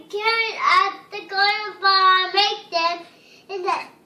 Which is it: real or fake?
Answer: real